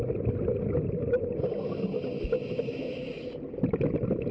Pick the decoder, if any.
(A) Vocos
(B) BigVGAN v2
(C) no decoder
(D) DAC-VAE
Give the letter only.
C